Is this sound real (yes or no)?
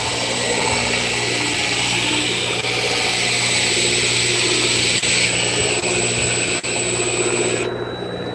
yes